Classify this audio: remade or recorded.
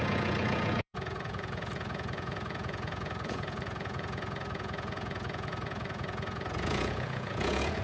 remade